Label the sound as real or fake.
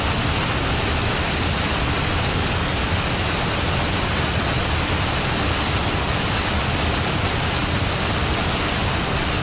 real